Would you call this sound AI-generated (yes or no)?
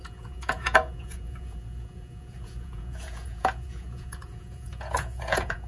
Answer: yes